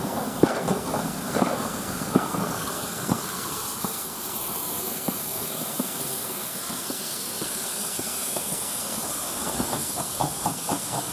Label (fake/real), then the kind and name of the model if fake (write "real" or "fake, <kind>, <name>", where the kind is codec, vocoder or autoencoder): fake, codec, SNAC